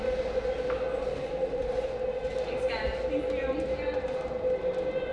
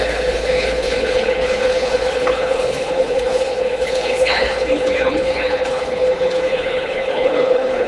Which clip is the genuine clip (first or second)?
first